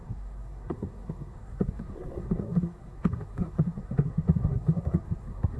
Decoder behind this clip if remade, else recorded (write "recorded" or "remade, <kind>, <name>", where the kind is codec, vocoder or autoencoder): remade, codec, SNAC